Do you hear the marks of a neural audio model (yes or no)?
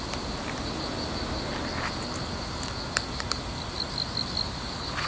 no